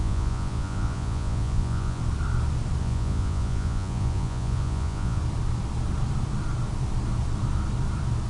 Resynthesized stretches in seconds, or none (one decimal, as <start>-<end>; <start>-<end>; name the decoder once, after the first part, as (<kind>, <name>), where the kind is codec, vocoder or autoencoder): 0.0-2.0 (vocoder, Vocos); 2.8-5.2